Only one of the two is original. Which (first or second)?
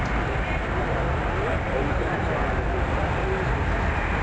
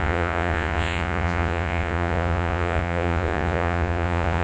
first